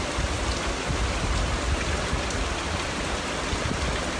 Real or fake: real